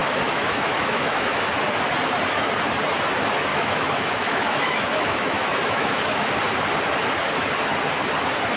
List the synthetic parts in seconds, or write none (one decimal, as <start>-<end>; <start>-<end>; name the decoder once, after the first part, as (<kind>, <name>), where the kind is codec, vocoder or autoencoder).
0.0-1.4 (autoencoder, DAC-VAE); 3.5-6.3